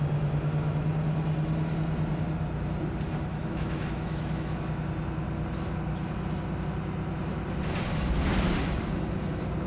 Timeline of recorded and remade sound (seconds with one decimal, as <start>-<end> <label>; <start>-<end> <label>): 0.0-3.3 recorded; 3.3-4.6 remade; 4.6-9.7 recorded

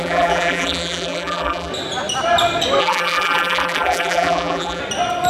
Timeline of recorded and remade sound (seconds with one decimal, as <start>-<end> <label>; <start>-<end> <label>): 0.0-1.7 remade; 1.7-2.8 recorded; 2.8-4.8 remade; 4.8-5.3 recorded

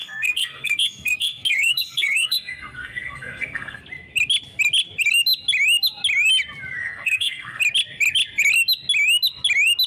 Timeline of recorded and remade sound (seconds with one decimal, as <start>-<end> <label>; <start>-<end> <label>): 0.0-3.8 remade; 3.8-6.8 recorded; 6.8-7.6 remade; 7.6-9.9 recorded

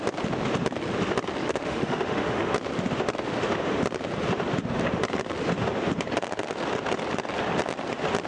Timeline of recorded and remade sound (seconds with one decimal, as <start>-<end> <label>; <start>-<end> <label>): 0.0-1.4 recorded; 1.4-2.4 remade; 2.4-8.3 recorded

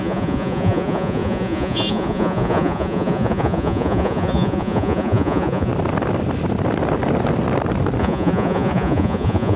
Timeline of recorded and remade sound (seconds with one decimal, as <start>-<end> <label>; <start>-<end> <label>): 0.0-5.7 remade; 5.7-8.0 recorded; 8.0-9.6 remade